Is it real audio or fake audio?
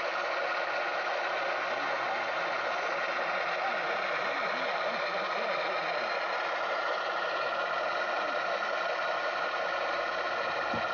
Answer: real